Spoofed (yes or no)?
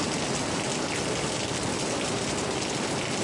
no